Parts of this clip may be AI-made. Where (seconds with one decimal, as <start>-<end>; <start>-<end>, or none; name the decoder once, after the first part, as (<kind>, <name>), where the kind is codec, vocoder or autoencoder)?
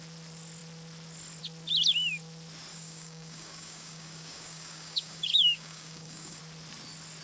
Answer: 2.7-6.4 (codec, DAC)